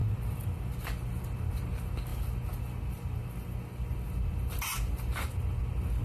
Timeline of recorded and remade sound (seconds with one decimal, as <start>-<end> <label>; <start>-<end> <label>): 0.0-0.7 remade; 0.7-6.0 recorded